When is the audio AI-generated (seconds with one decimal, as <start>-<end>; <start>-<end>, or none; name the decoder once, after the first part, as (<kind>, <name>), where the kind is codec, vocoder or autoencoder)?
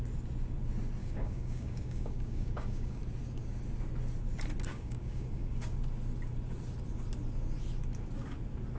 1.0-3.0 (codec, DAC); 4.7-5.5